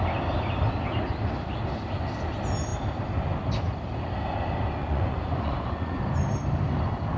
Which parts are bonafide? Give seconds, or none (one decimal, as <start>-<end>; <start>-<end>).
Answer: 0.0-4.8; 6.0-7.2